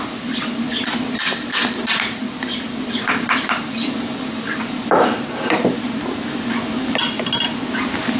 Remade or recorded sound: recorded